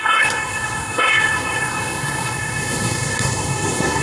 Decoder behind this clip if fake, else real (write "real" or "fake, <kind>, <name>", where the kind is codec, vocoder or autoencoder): fake, codec, SNAC